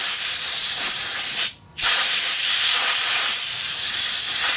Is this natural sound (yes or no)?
no